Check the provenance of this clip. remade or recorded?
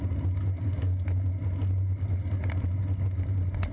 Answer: recorded